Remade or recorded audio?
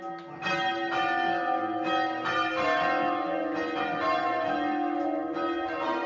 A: recorded